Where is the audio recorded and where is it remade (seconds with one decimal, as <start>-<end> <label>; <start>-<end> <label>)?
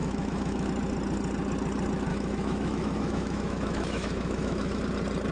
0.0-0.7 remade; 0.7-2.1 recorded; 2.1-4.8 remade; 4.8-5.3 recorded